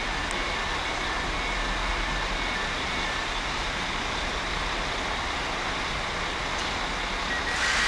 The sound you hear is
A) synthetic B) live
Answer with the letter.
B